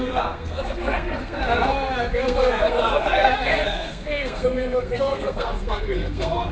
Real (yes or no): no